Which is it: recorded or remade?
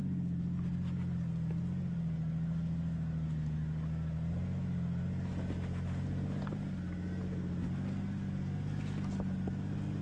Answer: recorded